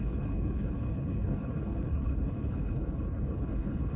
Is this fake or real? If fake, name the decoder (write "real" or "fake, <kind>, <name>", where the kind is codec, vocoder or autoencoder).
fake, codec, HILCodec